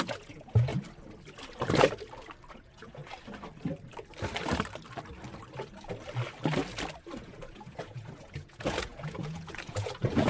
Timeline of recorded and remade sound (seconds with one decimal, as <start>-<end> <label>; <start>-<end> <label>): 0.0-0.7 remade; 0.7-2.5 recorded; 2.5-3.0 remade; 3.0-7.2 recorded; 7.2-10.3 remade